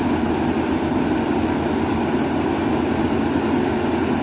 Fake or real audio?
real